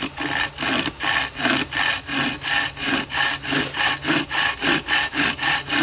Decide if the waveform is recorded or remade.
recorded